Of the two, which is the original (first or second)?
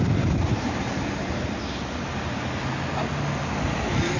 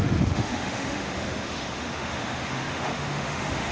first